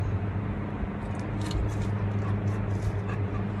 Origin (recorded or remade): recorded